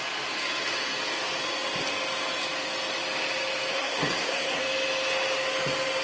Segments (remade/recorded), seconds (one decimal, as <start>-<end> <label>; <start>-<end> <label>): 0.0-3.7 recorded; 3.7-4.6 remade; 4.6-6.0 recorded